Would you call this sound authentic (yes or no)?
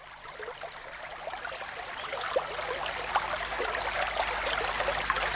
yes